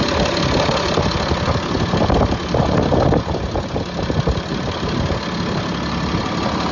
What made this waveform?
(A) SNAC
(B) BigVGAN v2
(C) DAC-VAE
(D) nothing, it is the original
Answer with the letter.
D